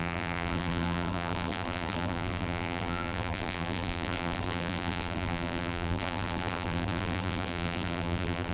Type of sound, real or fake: fake